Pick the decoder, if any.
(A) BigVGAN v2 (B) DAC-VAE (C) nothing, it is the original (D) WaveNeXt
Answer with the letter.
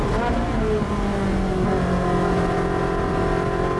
C